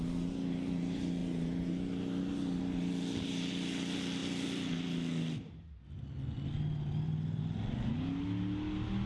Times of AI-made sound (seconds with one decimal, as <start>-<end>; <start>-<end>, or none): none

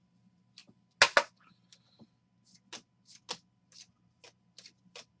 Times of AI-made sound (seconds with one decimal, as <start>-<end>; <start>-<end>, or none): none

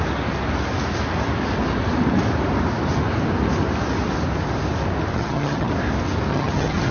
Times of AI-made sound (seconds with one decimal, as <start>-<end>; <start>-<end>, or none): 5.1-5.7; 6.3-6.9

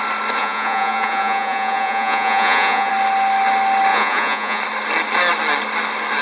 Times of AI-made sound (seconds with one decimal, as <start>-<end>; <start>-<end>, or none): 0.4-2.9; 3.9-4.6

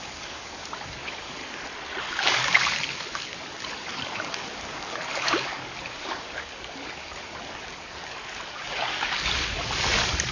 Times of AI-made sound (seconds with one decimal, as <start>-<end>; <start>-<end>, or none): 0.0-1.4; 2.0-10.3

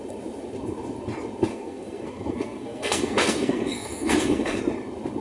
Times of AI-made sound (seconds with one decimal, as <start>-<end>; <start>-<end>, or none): 1.5-4.6

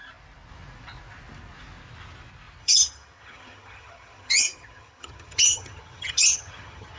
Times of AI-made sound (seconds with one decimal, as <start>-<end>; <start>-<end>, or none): 2.6-7.0

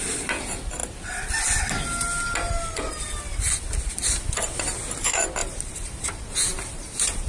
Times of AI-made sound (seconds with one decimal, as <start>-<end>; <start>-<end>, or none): 5.4-7.3